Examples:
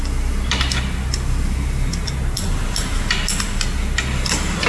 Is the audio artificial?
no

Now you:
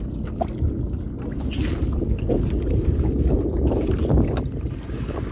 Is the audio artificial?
no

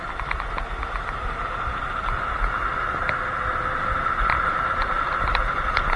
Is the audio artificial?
no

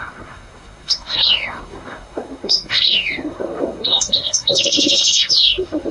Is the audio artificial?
yes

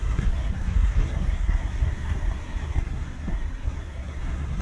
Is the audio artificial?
yes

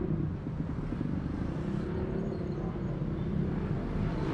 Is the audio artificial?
no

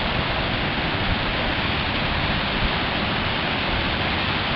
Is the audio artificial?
no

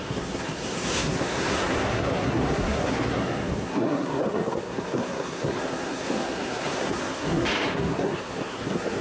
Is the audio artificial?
yes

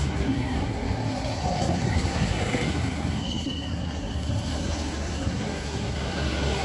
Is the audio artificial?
yes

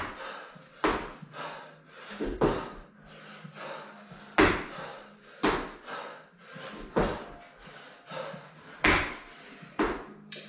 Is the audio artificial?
no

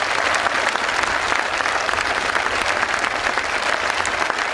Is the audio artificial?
no